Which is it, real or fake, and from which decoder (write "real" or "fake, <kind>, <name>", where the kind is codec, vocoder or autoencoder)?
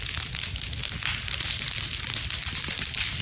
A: real